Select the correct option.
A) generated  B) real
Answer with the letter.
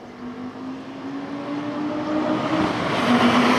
B